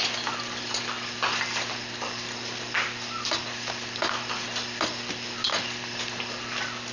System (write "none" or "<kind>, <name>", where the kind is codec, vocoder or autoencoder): none